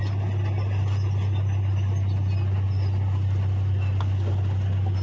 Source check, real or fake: real